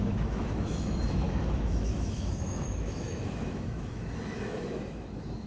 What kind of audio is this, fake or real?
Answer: fake